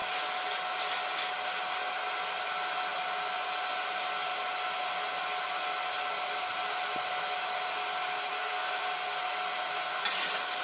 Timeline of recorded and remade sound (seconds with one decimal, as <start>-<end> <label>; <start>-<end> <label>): 0.0-8.3 recorded; 8.3-8.8 remade; 8.8-10.6 recorded